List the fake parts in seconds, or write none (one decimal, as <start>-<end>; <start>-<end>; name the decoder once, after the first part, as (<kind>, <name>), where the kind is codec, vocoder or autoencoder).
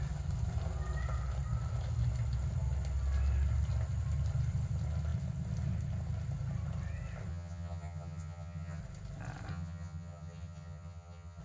7.3-8.8 (vocoder, HiFi-GAN); 9.5-11.4